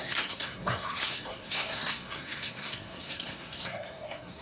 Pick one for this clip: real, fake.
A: fake